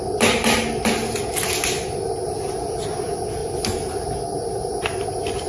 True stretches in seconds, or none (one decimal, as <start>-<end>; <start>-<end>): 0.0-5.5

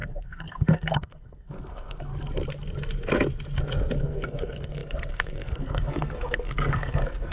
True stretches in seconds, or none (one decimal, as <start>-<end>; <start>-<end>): 2.1-4.0

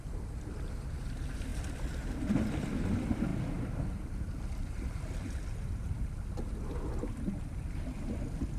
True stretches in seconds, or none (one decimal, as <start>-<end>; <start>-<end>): 0.0-8.6